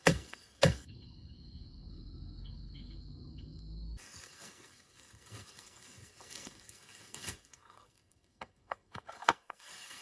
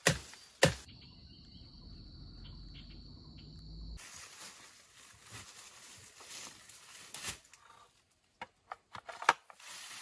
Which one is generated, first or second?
first